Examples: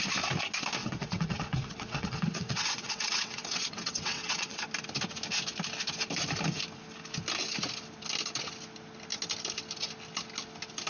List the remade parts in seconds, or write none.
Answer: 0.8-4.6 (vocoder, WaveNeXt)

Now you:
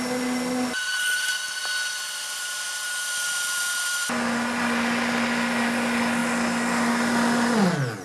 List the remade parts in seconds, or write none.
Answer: none